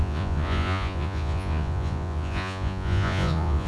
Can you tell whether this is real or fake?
fake